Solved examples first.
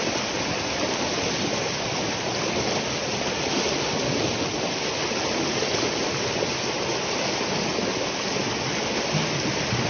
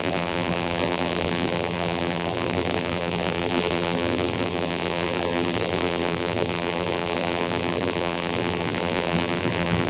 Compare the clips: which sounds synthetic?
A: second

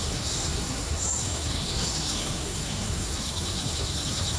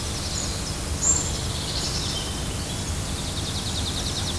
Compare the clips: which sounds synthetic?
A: first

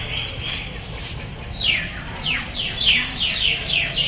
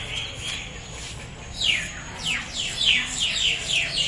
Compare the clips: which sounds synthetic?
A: first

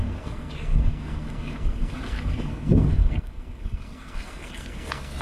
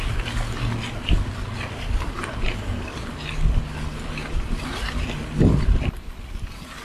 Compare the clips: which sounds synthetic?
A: first